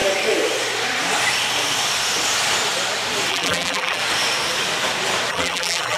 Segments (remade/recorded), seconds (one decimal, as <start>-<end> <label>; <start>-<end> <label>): 0.0-3.3 recorded; 3.3-4.0 remade; 4.0-5.3 recorded; 5.3-6.0 remade